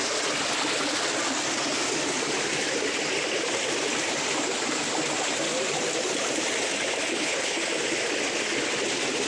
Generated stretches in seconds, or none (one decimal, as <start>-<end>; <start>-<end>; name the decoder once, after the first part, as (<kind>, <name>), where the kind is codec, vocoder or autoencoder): 7.1-7.6 (codec, HILCodec)